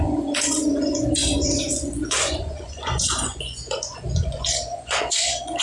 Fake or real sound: fake